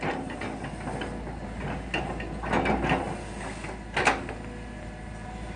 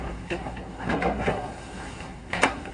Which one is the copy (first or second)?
second